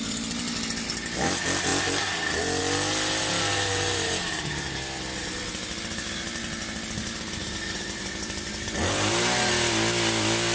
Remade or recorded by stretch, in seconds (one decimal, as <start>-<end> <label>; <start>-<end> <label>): 0.0-7.4 recorded; 7.4-9.5 remade; 9.5-10.5 recorded